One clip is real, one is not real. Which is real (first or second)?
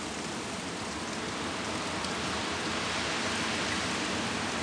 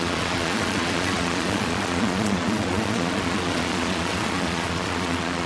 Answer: first